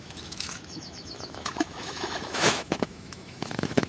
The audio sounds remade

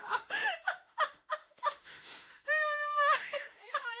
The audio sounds remade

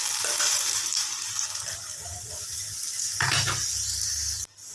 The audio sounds recorded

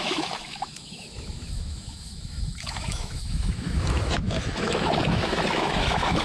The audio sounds remade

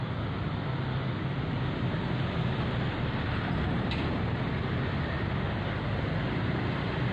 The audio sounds recorded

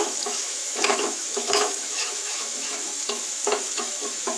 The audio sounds remade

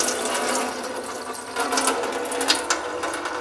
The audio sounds recorded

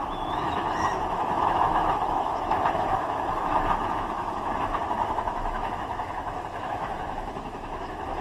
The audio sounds remade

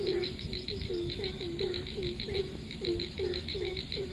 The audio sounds remade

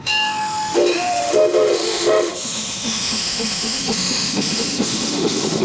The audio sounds remade